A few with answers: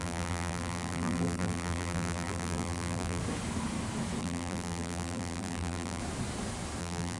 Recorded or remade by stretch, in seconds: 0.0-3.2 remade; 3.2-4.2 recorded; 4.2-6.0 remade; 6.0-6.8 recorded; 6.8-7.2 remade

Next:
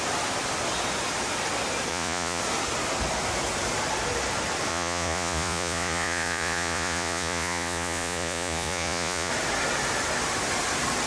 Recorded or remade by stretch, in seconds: 0.0-1.9 recorded; 1.9-2.4 remade; 2.4-4.7 recorded; 4.7-9.3 remade; 9.3-11.1 recorded

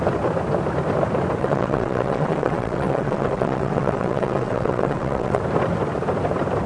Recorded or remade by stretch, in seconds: 0.0-1.4 recorded; 1.4-5.4 remade; 5.4-6.7 recorded